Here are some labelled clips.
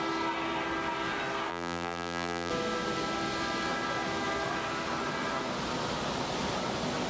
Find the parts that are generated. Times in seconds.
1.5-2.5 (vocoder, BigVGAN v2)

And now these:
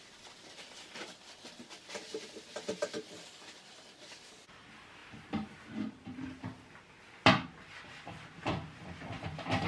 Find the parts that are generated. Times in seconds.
none

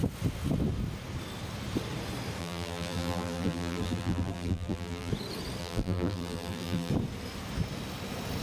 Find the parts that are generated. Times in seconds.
2.4-5.1 (vocoder, BigVGAN v2); 5.6-6.9

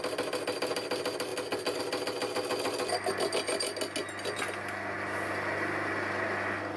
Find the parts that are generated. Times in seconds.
none